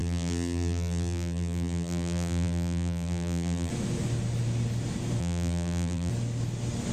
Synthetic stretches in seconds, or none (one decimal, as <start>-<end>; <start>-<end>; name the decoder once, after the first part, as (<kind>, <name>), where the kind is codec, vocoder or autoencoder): 0.0-3.7 (vocoder, BigVGAN v2); 5.2-6.1